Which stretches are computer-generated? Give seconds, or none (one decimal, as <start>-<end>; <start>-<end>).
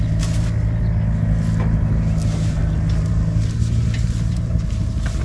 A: none